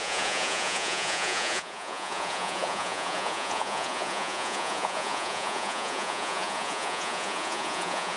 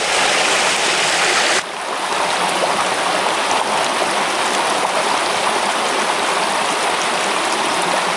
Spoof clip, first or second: first